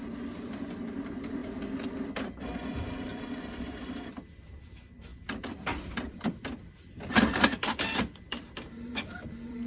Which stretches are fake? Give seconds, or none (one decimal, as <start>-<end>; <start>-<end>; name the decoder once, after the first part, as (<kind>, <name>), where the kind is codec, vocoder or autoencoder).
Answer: 0.0-3.1 (vocoder, BigVGAN v2); 3.8-9.7